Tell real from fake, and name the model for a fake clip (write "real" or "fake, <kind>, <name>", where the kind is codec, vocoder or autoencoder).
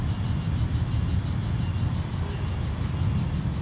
real